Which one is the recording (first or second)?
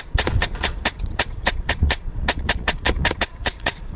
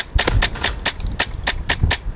second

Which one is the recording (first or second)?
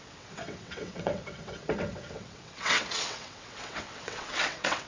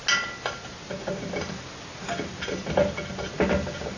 second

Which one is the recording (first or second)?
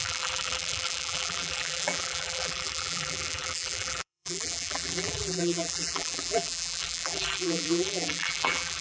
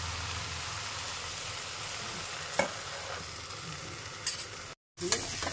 second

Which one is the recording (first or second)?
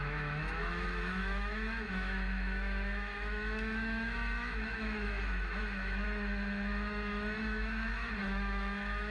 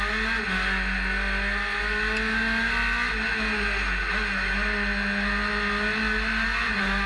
second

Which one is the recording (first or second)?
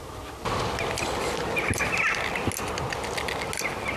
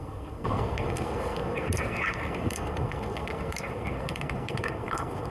first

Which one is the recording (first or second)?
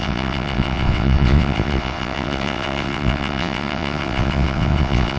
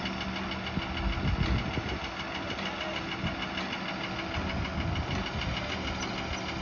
second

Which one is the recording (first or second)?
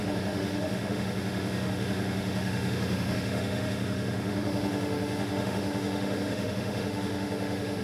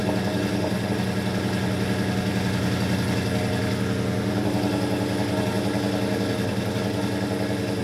second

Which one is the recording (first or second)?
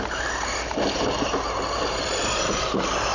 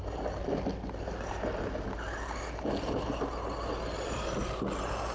second